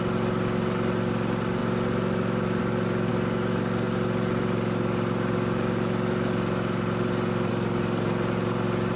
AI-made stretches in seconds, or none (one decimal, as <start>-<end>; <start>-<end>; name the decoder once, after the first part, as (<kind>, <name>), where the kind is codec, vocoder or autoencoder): none